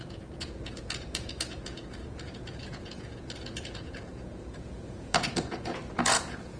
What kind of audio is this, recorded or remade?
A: remade